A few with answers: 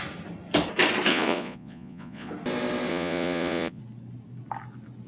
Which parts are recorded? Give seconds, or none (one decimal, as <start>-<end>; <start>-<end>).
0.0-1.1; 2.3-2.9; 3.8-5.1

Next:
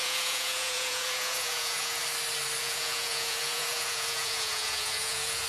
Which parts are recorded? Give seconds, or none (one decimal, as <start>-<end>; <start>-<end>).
2.0-2.6

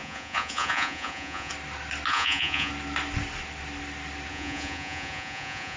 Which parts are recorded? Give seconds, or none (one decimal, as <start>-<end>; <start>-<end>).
1.5-2.1; 2.7-4.3

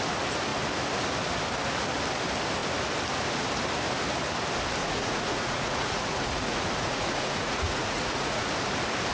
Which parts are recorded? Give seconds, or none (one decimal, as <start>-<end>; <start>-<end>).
0.0-4.8; 8.5-9.1

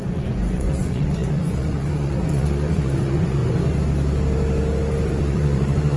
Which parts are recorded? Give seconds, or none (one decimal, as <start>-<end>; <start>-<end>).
3.4-5.1

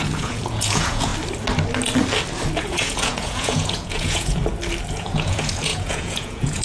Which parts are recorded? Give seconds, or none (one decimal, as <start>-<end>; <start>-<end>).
1.1-2.6; 4.4-4.9